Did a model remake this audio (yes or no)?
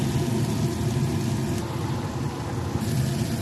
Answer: no